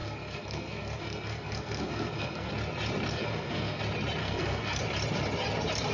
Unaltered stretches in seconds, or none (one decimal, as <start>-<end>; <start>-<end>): 2.5-3.1; 3.8-4.2; 4.8-5.9